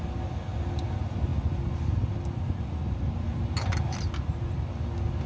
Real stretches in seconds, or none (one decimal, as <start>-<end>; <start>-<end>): 0.0-5.3